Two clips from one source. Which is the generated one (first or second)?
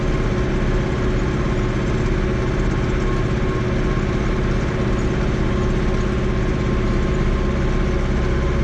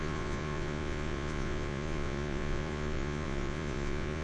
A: second